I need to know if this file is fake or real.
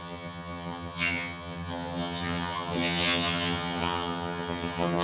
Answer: fake